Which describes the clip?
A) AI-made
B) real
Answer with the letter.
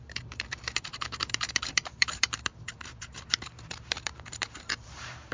A